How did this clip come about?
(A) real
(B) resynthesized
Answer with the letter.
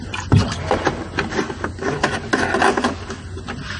A